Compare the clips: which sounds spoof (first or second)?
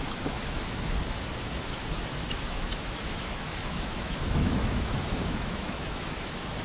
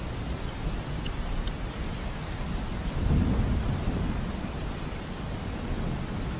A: first